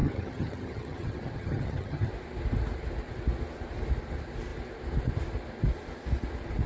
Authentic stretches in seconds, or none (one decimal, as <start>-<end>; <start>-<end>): 2.1-6.7